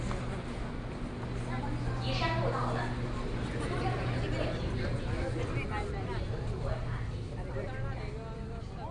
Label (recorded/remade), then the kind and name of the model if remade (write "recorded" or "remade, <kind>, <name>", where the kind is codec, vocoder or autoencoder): recorded